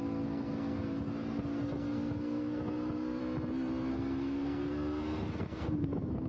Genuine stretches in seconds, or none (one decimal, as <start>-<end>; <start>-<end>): 3.2-3.9